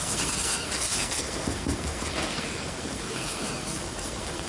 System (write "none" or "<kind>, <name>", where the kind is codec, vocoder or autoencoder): codec, SNAC